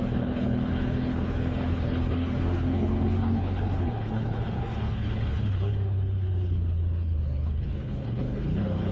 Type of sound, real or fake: fake